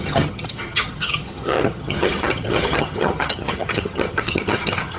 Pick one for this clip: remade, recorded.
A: remade